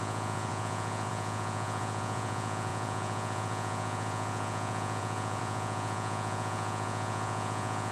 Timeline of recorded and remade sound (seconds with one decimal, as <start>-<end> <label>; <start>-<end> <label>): 0.0-7.9 remade